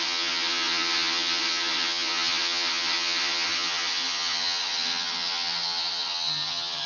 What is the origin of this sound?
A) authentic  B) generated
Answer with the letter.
B